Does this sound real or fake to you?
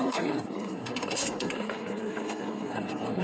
fake